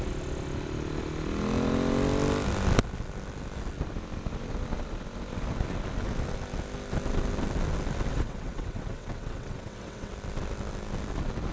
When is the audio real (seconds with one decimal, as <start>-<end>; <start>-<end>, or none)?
0.0-8.1; 10.1-11.5